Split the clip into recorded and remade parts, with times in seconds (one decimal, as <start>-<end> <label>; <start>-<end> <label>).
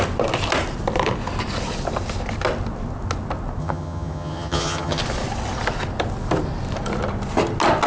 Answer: 0.0-3.6 recorded; 3.6-5.0 remade; 5.0-7.9 recorded